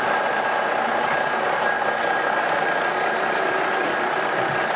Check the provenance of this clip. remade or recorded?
remade